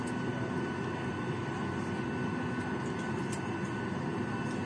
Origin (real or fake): real